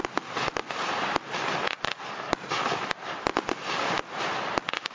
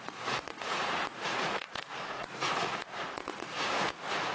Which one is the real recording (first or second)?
first